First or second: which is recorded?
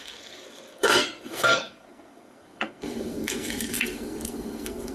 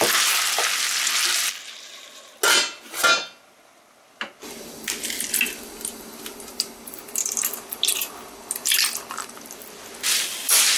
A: second